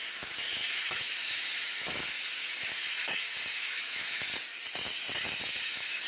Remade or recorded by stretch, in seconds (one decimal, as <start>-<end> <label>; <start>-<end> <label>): 0.0-4.3 remade; 4.3-5.4 recorded; 5.4-6.1 remade